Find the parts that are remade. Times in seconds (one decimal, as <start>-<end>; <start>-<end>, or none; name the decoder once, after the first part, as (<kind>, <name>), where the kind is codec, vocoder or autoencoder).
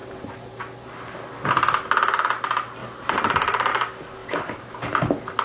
0.0-0.6 (vocoder, BigVGAN v2); 2.8-3.7; 4.2-4.8